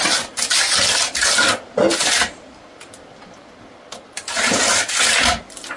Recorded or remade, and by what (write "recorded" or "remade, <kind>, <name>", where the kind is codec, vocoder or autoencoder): recorded